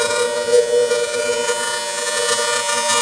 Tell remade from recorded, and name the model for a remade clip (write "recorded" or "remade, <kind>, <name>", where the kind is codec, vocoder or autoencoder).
remade, vocoder, Vocos